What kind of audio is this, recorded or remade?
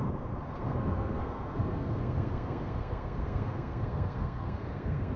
remade